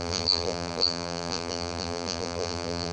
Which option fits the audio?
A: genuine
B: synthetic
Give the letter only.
B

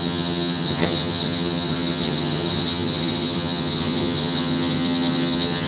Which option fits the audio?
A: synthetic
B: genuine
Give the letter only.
A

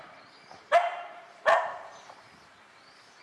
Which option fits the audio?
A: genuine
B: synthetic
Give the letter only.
B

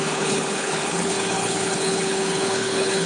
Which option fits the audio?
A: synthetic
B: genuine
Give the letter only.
A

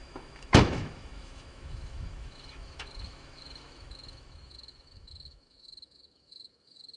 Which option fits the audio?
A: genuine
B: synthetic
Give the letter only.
B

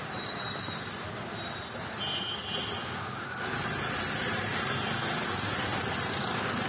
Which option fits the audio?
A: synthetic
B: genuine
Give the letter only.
B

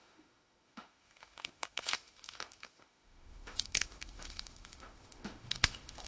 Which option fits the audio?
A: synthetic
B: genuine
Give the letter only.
A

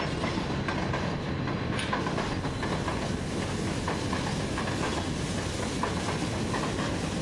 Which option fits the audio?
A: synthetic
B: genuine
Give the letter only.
B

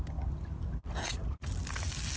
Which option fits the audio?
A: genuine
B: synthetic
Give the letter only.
A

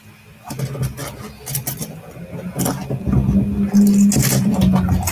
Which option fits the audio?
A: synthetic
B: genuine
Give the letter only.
B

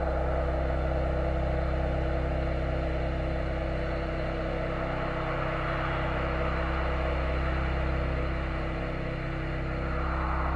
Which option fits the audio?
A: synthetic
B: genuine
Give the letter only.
B